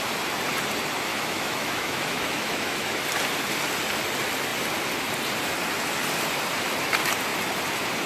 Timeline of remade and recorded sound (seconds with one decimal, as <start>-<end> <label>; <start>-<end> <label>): 0.0-1.1 recorded; 1.1-3.0 remade; 3.0-8.1 recorded